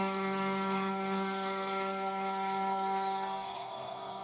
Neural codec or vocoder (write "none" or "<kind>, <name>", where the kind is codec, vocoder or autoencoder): codec, SNAC